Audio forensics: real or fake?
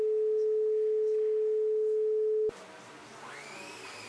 real